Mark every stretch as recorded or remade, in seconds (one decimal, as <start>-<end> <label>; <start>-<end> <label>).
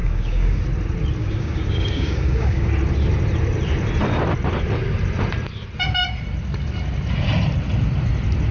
0.0-0.6 remade; 0.6-1.2 recorded; 1.2-2.7 remade; 2.7-8.5 recorded